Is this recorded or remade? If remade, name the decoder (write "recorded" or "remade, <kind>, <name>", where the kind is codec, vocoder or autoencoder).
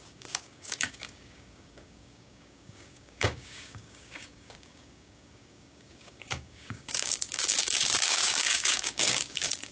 remade, codec, DAC